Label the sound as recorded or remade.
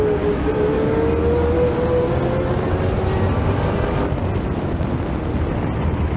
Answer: recorded